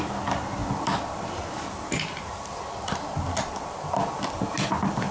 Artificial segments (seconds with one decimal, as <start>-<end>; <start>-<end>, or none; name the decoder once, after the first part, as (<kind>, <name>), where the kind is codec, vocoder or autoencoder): none